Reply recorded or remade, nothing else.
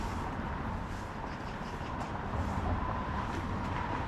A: remade